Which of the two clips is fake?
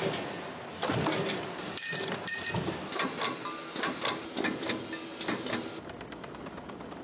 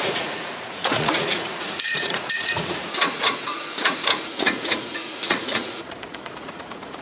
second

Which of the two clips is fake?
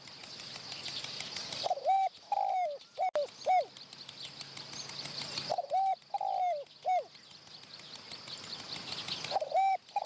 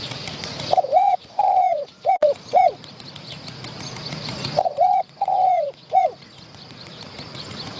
second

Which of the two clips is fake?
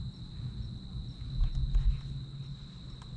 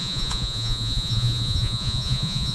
second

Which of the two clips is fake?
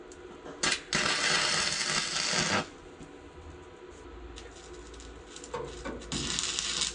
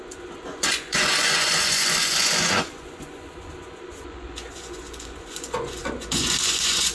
second